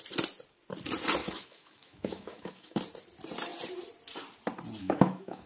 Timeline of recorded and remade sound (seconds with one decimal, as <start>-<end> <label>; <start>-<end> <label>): 0.0-1.2 recorded; 1.2-2.8 remade; 2.8-4.8 recorded; 4.8-5.5 remade